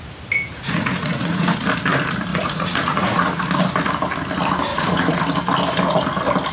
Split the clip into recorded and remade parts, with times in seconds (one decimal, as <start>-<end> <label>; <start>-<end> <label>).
0.0-0.5 recorded; 0.5-1.6 remade; 1.6-2.3 recorded; 2.3-3.4 remade; 3.4-4.7 recorded; 4.7-5.2 remade; 5.2-6.5 recorded